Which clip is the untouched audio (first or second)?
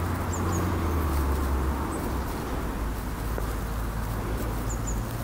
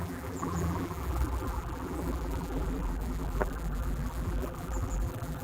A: first